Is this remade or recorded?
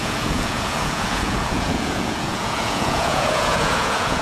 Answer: remade